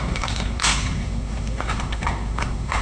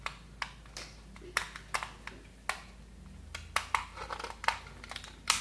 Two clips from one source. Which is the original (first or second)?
second